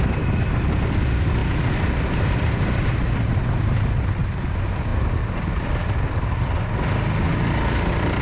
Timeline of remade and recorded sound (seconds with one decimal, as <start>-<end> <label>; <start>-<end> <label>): 0.0-8.2 recorded